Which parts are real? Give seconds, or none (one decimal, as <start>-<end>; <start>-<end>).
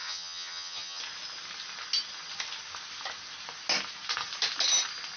1.0-5.2